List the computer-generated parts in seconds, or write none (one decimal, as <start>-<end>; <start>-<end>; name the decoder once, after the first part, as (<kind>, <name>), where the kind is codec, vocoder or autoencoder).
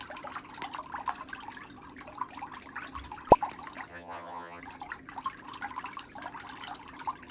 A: 3.9-4.6 (vocoder, HiFi-GAN)